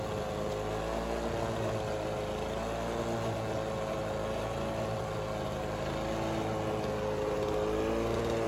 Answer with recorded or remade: recorded